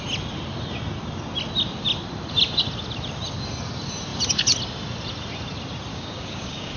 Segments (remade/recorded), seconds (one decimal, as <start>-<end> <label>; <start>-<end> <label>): 0.0-5.9 recorded; 5.9-6.8 remade